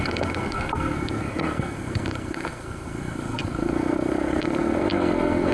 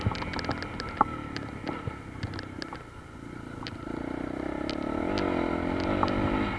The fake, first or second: first